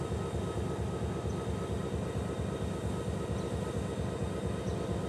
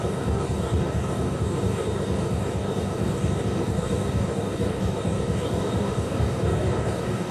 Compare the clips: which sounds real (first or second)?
first